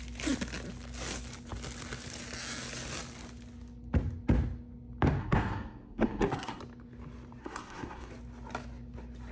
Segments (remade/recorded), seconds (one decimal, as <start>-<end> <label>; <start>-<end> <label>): 0.0-5.2 recorded; 5.2-6.6 remade; 6.6-7.4 recorded; 7.4-8.1 remade; 8.1-9.3 recorded